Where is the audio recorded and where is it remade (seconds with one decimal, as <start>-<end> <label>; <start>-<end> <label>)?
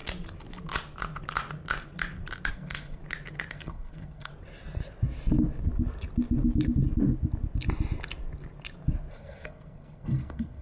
0.0-2.5 recorded; 2.5-3.0 remade; 3.0-3.5 recorded; 3.5-4.3 remade; 4.3-9.1 recorded; 9.1-10.6 remade